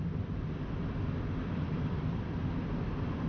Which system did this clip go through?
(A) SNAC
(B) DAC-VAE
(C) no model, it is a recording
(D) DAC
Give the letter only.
C